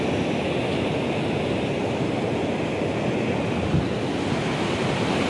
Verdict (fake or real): real